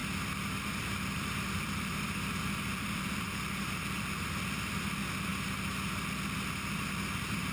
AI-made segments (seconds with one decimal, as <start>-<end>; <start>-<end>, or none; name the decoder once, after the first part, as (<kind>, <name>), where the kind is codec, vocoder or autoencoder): 0.0-5.3 (vocoder, BigVGAN v2); 6.6-7.5